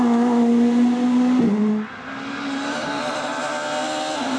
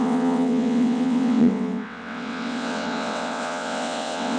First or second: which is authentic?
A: first